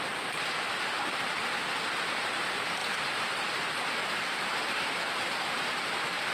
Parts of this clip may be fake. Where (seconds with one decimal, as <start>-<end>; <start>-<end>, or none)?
0.0-2.8; 3.4-6.3